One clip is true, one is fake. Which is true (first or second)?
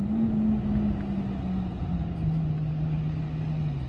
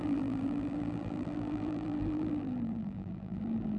first